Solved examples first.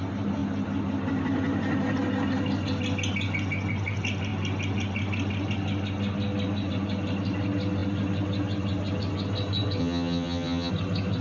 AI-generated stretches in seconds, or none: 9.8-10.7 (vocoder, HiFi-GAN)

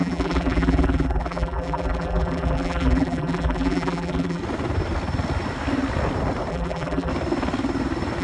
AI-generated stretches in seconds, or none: 0.0-4.4 (vocoder, BigVGAN v2); 6.5-7.1

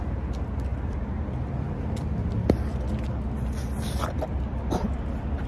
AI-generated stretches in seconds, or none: none

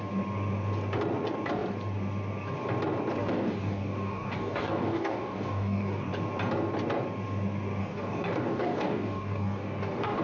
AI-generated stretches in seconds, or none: 3.2-6.1 (codec, DAC); 7.8-10.2

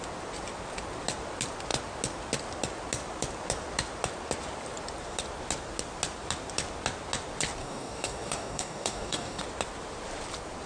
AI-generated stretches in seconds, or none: 7.6-9.4 (codec, DAC)

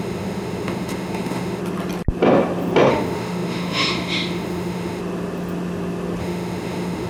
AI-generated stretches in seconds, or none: 0.0-1.6 (autoencoder, DAC-VAE); 2.9-5.0; 6.2-7.1